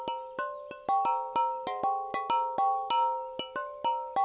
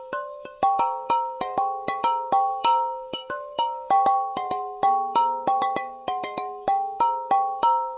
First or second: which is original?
first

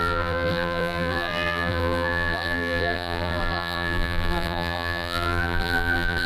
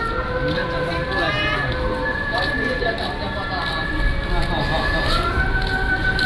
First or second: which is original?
second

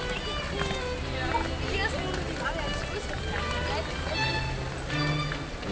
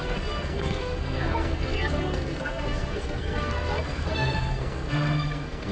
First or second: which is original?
first